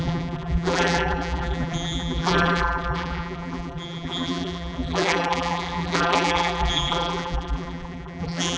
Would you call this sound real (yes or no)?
no